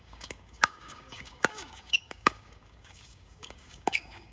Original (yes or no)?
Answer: no